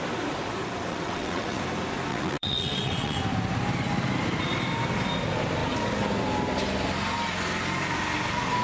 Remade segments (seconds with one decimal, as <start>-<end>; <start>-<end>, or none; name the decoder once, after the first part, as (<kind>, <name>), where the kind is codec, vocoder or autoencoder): 0.9-1.6 (vocoder, WaveNeXt); 2.1-3.2